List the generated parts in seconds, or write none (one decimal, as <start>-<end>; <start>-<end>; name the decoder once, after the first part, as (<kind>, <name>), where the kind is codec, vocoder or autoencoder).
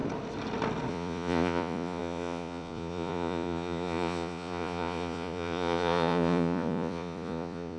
0.9-7.8 (vocoder, Vocos)